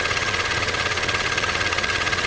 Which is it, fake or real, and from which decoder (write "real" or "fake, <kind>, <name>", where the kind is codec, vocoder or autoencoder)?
fake, vocoder, WaveNeXt